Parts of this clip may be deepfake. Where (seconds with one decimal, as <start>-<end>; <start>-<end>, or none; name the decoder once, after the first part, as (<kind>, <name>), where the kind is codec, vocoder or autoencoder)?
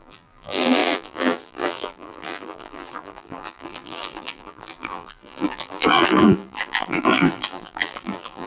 0.0-8.5 (vocoder, BigVGAN v2)